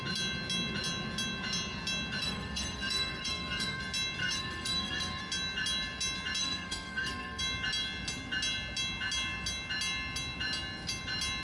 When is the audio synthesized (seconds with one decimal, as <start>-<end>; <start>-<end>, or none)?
2.2-3.8; 4.2-5.2; 6.4-7.4